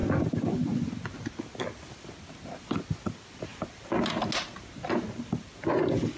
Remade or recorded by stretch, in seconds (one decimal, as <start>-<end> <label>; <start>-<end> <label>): 0.0-6.2 recorded